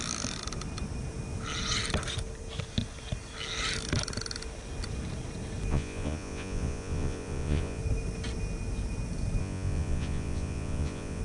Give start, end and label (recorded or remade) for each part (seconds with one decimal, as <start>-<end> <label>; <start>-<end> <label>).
0.0-5.7 recorded; 5.7-7.8 remade; 7.8-9.4 recorded; 9.4-11.2 remade